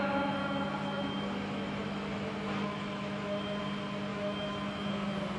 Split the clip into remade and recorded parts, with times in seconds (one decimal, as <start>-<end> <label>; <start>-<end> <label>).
0.0-0.4 recorded; 0.4-3.6 remade; 3.6-4.1 recorded; 4.1-4.9 remade; 4.9-5.4 recorded